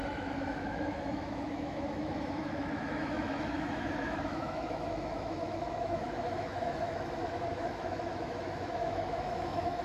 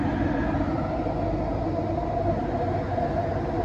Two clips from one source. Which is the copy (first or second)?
first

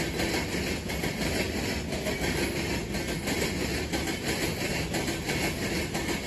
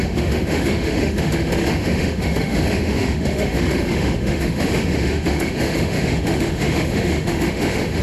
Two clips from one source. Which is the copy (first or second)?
second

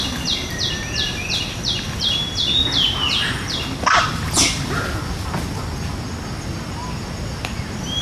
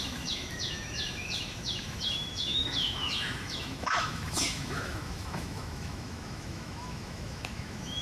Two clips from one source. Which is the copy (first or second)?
second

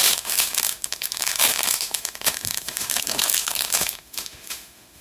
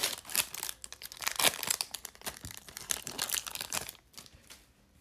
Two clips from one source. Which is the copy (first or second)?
first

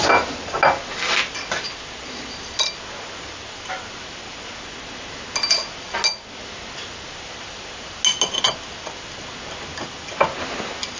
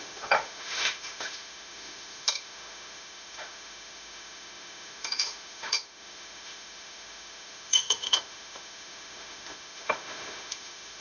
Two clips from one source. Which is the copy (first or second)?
second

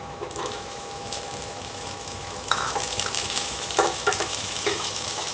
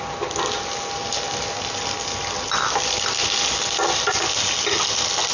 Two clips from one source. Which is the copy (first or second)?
first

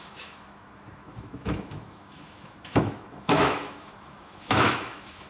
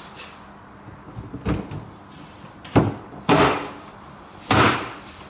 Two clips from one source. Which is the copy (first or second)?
first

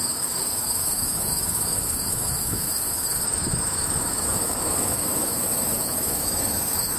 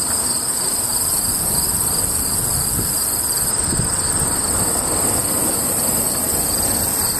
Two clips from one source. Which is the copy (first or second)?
first